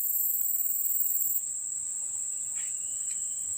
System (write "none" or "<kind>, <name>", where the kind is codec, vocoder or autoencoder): none